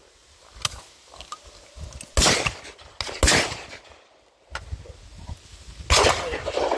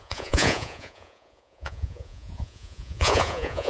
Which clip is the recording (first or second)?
first